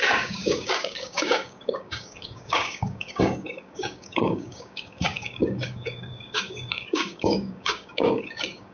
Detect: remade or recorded remade